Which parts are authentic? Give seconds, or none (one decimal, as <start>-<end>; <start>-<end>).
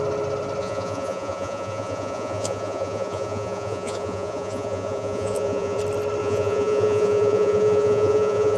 0.0-0.6; 5.8-6.2